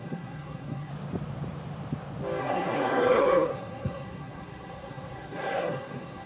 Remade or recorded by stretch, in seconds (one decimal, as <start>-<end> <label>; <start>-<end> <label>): 0.0-0.9 remade; 0.9-2.4 recorded; 2.4-6.3 remade